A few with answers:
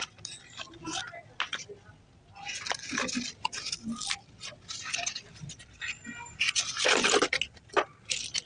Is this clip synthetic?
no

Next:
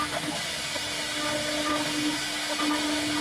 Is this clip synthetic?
no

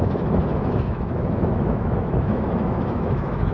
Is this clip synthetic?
yes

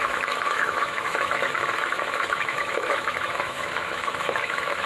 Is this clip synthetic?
yes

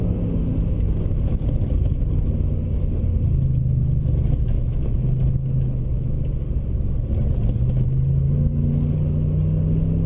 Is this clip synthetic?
no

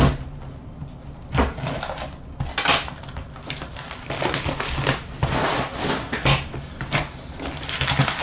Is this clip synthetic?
no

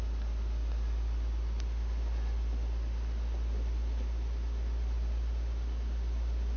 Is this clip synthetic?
no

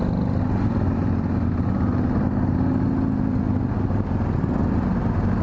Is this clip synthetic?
no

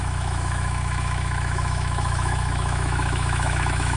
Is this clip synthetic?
yes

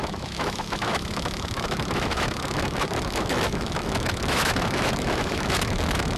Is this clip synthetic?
yes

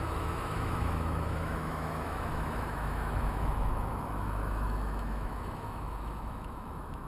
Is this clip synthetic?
yes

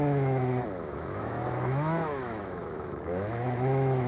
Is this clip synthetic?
yes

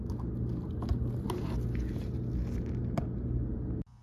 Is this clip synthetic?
no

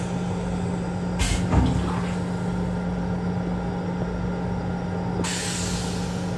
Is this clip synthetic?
no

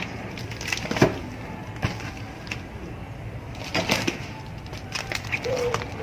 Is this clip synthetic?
no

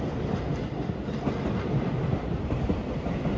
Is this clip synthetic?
no